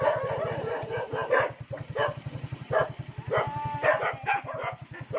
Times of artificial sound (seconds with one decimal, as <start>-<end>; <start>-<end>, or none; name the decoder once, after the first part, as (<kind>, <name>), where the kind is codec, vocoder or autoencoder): none